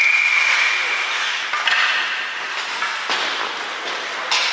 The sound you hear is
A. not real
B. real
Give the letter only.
B